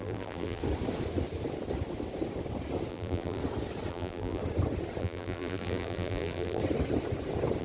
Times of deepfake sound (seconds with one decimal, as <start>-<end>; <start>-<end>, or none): 0.0-0.6; 2.9-3.4; 3.9-4.4; 5.0-6.6